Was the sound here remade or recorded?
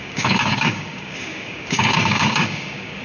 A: remade